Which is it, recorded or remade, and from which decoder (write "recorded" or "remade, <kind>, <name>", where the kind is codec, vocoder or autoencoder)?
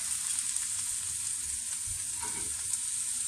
recorded